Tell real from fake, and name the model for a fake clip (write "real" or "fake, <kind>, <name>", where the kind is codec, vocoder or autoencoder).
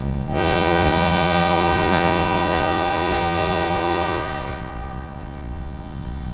fake, vocoder, Vocos